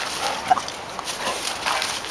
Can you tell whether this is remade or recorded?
recorded